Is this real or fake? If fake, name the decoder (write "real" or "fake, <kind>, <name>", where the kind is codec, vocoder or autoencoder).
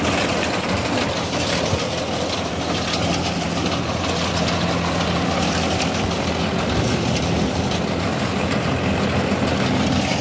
real